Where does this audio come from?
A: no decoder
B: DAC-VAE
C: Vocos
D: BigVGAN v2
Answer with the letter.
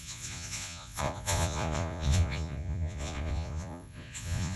C